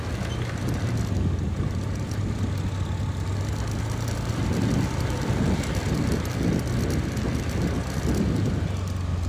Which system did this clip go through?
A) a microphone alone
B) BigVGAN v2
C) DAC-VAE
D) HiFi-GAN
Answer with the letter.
A